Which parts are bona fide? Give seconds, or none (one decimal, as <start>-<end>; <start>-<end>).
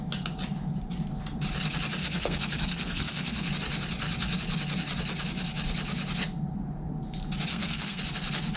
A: 0.0-2.0; 3.5-7.5; 8.0-8.6